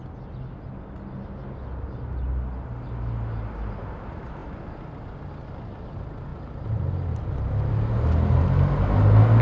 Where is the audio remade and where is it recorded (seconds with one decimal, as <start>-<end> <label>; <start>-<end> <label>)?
0.0-9.4 recorded